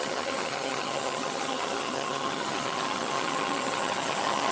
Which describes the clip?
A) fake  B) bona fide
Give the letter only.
A